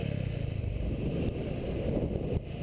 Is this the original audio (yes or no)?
yes